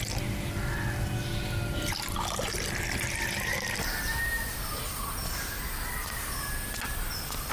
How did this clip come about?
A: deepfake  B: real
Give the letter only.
B